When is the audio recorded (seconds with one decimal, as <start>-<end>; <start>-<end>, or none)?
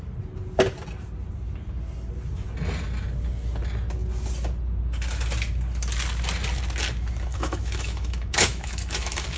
0.0-7.3